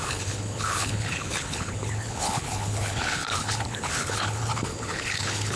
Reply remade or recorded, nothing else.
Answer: remade